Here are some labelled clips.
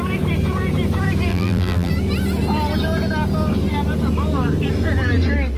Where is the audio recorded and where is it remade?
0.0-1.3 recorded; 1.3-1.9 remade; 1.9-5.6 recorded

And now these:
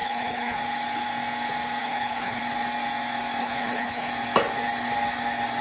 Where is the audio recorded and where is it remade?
0.0-0.6 remade; 0.6-1.8 recorded; 1.8-2.4 remade; 2.4-3.4 recorded; 3.4-4.1 remade; 4.1-5.6 recorded

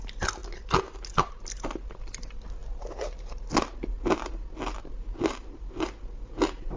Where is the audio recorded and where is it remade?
0.0-6.8 recorded

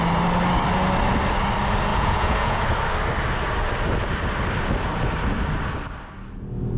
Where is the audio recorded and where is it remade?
0.0-1.9 recorded; 1.9-2.6 remade; 2.6-6.8 recorded